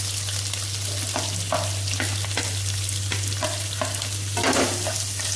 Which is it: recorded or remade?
recorded